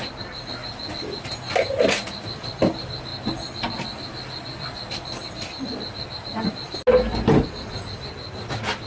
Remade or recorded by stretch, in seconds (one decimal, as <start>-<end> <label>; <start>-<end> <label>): 0.0-8.9 recorded